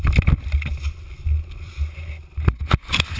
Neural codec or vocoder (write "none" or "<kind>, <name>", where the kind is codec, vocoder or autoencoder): none